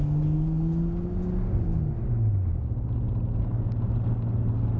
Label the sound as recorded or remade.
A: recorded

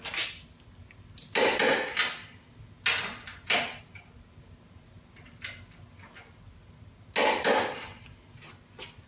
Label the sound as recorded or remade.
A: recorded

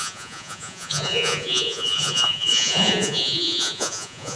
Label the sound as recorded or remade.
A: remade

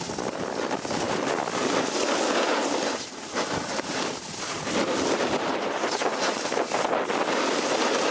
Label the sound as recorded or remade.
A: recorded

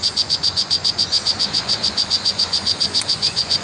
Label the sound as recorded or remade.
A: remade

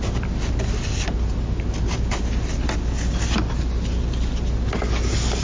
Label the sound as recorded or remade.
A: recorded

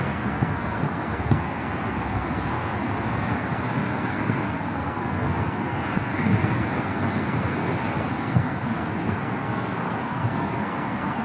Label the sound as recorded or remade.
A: remade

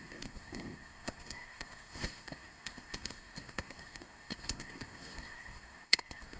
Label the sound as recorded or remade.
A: remade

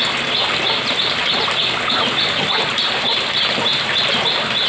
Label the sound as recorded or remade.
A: recorded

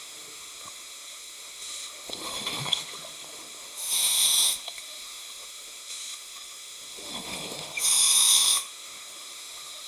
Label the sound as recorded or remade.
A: remade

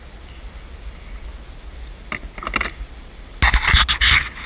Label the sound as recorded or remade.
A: recorded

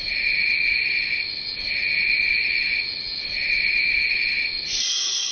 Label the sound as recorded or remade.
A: remade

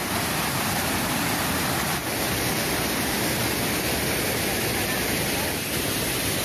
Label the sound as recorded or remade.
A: recorded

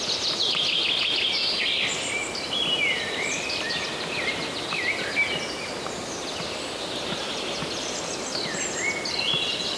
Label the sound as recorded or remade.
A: recorded